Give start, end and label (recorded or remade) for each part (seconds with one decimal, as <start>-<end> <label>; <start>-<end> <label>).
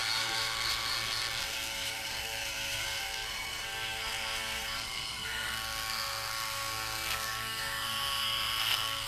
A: 0.0-9.1 remade